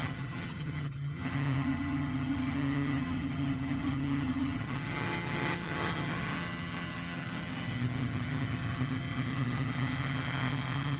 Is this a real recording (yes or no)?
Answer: no